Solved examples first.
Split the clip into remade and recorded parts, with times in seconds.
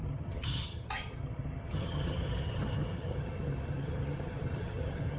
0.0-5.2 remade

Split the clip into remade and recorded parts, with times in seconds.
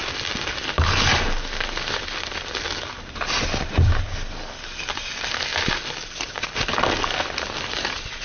0.0-8.2 recorded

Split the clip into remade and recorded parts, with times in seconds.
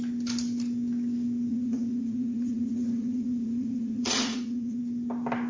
0.0-1.5 recorded; 1.5-4.8 remade; 4.8-5.5 recorded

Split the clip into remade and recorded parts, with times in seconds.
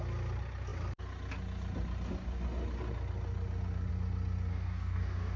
0.0-4.5 recorded; 4.5-5.4 remade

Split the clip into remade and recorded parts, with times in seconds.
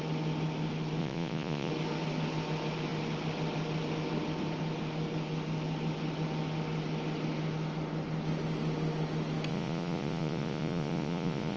0.0-1.0 recorded; 1.0-1.7 remade; 1.7-9.5 recorded; 9.5-11.6 remade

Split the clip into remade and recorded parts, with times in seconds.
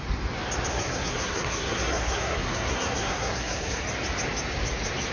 0.0-0.7 recorded; 0.7-3.8 remade; 3.8-5.1 recorded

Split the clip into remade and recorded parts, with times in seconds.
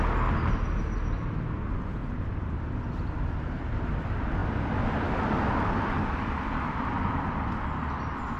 0.0-8.4 recorded